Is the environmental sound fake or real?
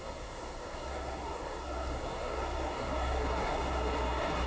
fake